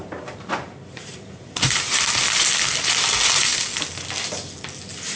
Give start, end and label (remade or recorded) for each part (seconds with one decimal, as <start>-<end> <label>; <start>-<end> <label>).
0.0-2.0 remade; 2.0-5.2 recorded